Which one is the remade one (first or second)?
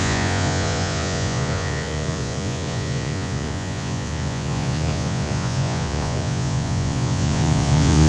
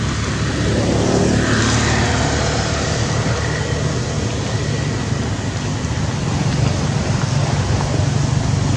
first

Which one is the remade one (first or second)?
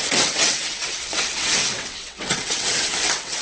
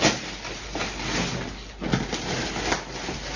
first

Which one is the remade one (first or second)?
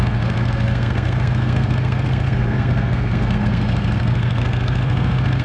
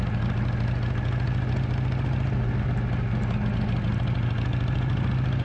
first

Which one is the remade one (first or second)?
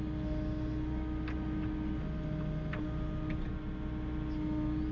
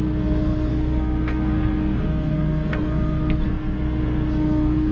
second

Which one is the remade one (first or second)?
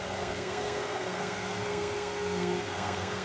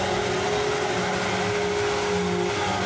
first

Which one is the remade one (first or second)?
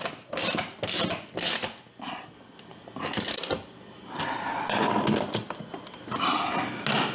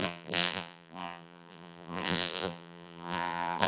second